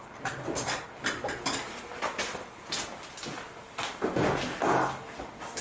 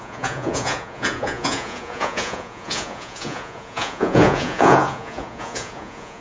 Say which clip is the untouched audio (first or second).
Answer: first